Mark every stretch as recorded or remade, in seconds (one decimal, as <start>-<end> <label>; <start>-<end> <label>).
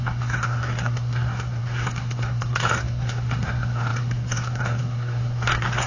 0.0-5.9 remade